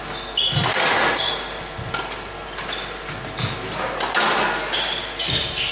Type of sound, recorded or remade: recorded